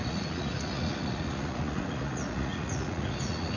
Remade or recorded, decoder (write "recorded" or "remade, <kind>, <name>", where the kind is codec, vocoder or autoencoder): remade, vocoder, Vocos